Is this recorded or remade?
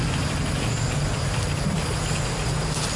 recorded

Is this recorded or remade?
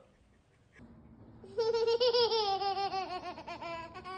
recorded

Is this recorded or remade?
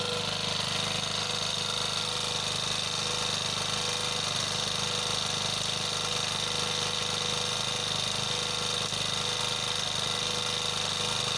recorded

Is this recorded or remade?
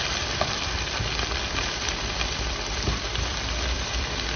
remade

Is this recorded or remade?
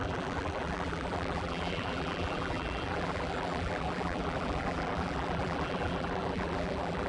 remade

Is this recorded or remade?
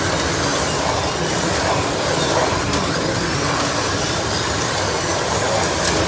remade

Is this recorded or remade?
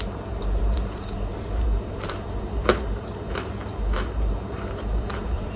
remade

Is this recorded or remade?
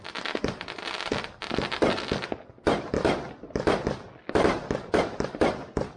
recorded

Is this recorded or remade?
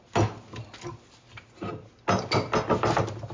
recorded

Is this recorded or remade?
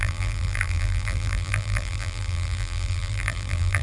remade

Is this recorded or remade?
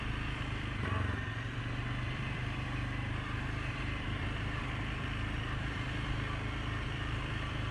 remade